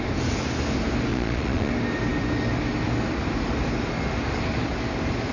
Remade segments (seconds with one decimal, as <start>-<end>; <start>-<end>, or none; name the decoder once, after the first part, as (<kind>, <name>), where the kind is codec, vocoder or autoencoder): 1.1-1.7 (vocoder, Vocos)